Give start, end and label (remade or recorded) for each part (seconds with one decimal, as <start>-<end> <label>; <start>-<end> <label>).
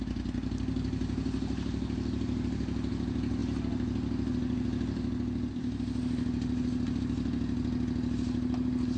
0.0-9.0 recorded